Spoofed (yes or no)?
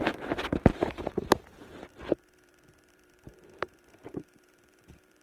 yes